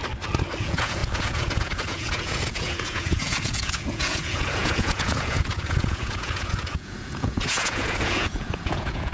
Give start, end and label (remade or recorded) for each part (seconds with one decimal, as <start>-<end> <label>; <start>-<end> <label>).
0.0-0.6 recorded; 0.6-9.1 remade